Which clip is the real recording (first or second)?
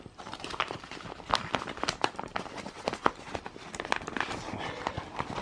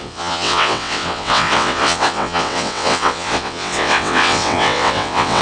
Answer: first